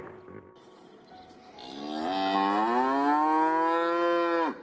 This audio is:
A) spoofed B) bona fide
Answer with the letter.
B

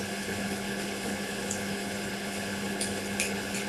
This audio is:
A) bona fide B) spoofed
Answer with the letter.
B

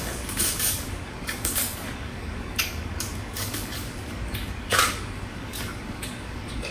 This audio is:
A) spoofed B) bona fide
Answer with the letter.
A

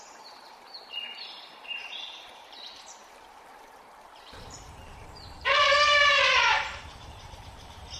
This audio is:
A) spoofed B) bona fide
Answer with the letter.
A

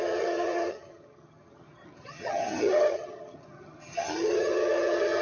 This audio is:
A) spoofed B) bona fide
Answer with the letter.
A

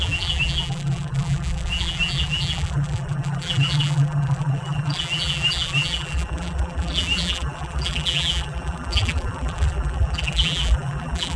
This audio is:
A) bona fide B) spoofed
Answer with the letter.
B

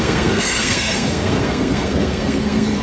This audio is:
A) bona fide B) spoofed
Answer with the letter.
B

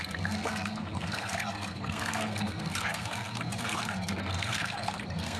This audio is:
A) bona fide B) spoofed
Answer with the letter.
B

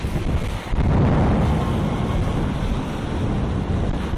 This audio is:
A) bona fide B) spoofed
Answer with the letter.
A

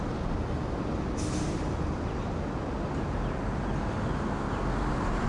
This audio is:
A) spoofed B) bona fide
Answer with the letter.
B